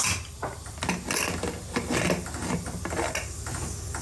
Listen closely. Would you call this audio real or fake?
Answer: real